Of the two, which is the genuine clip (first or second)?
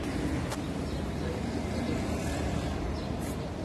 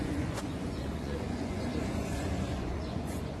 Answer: first